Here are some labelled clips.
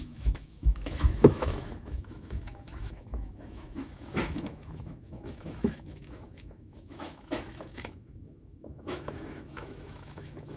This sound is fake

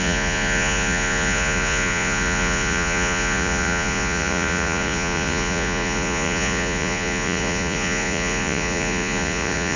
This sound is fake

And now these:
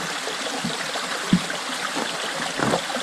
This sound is real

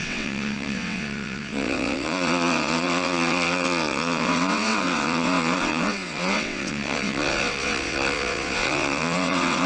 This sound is fake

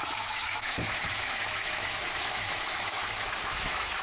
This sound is fake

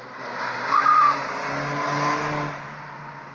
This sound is real